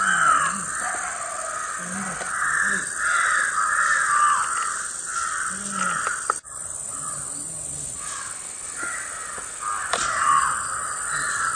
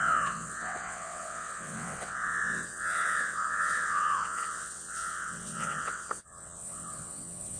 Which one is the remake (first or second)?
second